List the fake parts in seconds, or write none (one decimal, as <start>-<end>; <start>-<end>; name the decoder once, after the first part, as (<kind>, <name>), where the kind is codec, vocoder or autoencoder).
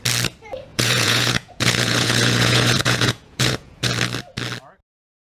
0.7-3.9 (vocoder, Vocos)